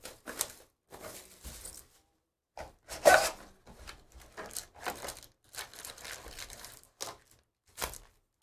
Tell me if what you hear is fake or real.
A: real